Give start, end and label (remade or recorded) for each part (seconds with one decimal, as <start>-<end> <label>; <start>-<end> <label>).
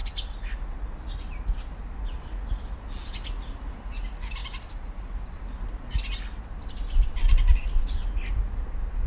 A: 0.0-9.1 recorded